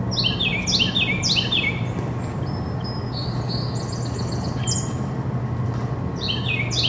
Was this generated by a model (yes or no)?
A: no